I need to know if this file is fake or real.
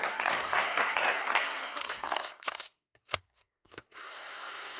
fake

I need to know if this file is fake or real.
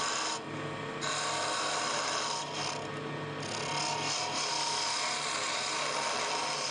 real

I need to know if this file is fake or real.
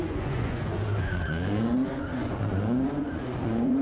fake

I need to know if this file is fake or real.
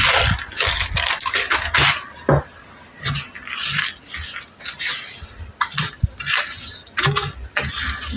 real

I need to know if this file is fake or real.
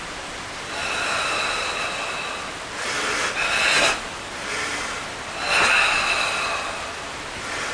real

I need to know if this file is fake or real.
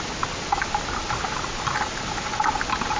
real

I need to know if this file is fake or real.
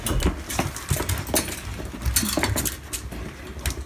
real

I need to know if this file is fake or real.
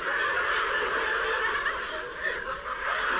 real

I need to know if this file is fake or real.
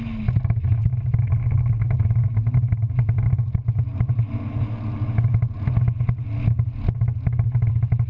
real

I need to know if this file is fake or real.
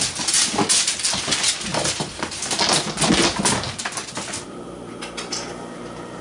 real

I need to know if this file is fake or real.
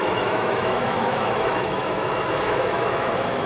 fake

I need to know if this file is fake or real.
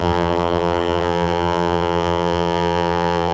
fake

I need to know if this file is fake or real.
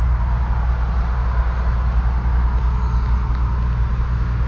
real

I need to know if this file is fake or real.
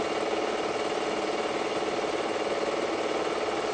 real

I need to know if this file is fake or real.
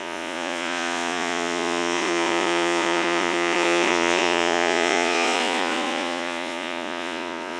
fake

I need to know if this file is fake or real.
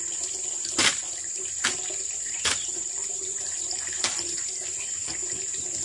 real